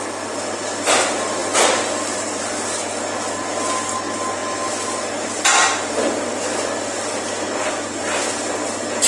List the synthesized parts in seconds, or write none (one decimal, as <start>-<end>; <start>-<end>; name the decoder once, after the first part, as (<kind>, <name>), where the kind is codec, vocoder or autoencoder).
none